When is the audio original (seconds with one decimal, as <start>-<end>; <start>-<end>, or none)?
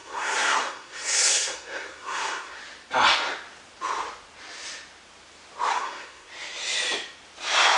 2.6-5.7; 6.3-7.8